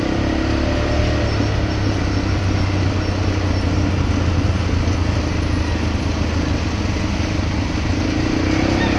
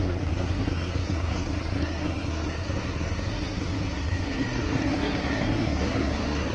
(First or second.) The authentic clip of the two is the first